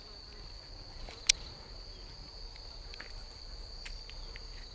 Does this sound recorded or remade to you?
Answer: recorded